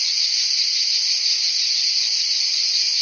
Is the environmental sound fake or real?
real